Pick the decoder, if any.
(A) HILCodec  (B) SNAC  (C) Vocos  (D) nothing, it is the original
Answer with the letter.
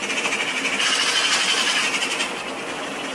D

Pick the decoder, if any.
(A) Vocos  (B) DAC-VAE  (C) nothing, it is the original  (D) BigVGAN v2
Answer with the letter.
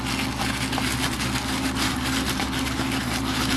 C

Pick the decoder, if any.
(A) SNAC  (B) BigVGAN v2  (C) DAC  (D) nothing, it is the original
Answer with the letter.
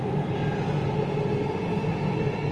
D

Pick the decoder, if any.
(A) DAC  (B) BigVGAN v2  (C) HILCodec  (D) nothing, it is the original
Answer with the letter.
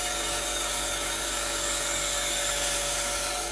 A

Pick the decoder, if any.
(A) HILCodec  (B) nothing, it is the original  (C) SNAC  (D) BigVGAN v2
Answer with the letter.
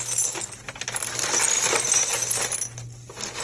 B